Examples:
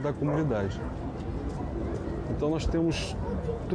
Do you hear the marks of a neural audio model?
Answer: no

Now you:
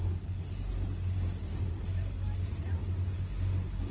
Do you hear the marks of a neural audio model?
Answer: no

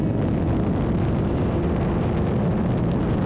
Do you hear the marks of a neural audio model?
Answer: no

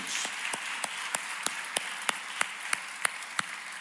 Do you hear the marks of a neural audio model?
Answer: no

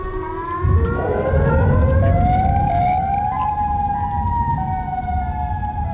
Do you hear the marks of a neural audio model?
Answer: no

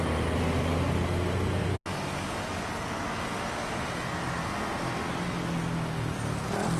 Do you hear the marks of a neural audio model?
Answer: no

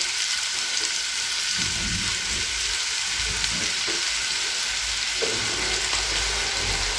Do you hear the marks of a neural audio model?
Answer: no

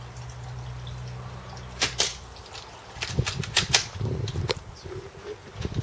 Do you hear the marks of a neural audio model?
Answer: no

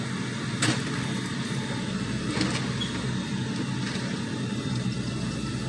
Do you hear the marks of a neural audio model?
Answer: no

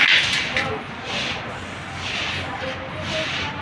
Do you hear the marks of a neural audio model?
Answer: no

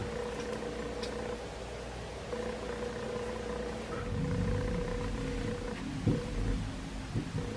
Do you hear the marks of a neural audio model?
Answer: no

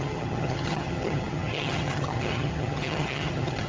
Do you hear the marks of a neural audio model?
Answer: yes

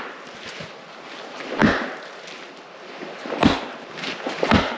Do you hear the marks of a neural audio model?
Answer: no